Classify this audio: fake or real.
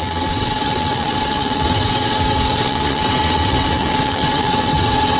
fake